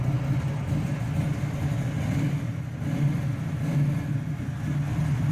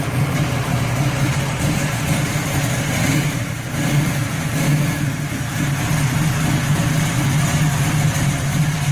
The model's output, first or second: second